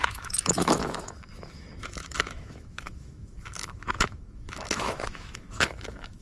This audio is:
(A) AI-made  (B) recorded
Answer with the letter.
A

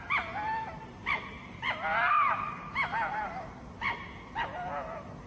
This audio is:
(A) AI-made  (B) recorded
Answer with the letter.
B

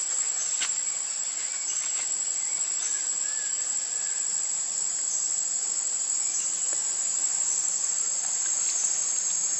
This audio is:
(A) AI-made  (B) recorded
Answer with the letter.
B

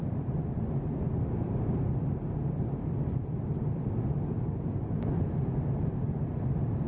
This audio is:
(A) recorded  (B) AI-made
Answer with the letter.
A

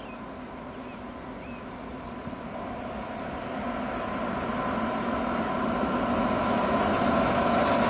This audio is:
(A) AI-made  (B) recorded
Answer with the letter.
B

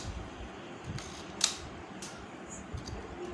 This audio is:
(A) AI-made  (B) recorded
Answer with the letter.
B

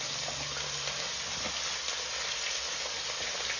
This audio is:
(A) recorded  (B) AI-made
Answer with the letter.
A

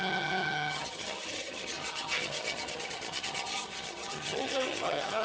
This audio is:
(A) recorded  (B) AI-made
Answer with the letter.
B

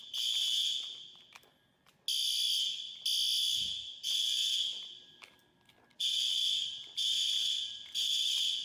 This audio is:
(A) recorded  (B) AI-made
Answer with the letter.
A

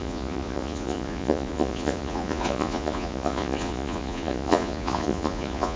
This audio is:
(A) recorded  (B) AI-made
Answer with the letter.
B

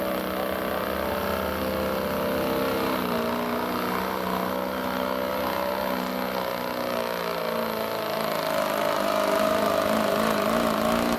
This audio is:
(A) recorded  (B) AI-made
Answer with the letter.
A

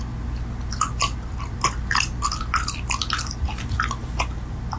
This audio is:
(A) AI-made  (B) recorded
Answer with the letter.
B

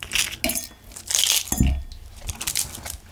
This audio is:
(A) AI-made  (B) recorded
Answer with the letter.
B